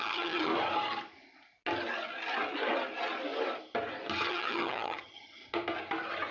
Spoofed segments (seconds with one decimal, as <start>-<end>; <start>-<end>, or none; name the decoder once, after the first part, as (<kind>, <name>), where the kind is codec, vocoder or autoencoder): 0.0-0.5 (vocoder, HiFi-GAN); 4.3-5.4